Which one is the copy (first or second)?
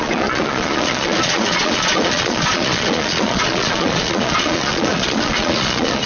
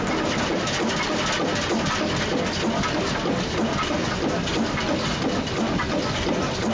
first